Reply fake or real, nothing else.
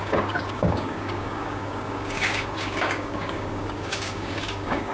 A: fake